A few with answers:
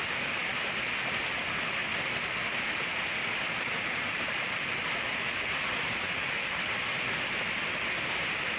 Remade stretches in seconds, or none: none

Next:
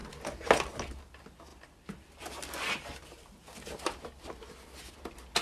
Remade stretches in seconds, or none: none